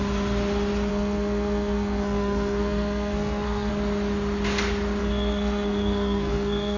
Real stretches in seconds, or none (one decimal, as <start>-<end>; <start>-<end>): 0.0-0.9; 3.7-5.0